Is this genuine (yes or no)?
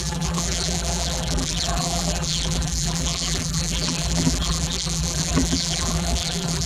no